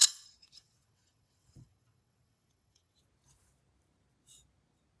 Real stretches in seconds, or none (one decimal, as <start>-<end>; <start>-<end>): 3.0-5.0